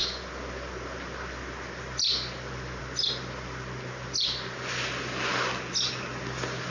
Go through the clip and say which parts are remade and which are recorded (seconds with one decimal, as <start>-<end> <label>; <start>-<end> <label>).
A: 0.0-6.7 recorded